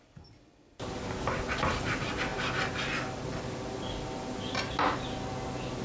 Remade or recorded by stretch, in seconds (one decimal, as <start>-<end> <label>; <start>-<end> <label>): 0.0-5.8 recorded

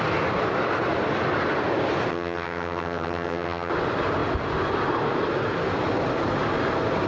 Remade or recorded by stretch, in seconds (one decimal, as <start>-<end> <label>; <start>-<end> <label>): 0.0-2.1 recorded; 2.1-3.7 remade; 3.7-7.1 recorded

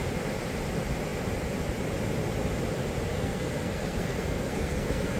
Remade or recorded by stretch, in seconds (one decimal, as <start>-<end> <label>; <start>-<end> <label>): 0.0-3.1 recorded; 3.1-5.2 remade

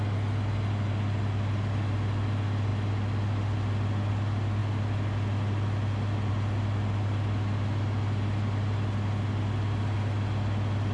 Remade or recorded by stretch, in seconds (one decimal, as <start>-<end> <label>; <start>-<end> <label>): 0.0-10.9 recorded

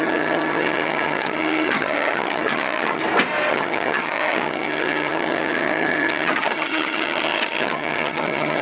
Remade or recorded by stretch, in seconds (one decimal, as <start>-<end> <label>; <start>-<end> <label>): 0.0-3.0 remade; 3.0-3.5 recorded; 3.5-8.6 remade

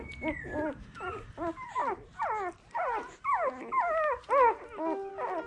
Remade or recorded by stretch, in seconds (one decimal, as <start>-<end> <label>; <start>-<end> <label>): 0.0-5.5 recorded

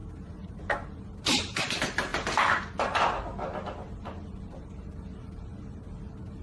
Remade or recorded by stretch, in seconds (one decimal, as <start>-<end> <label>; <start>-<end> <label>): 0.0-6.4 recorded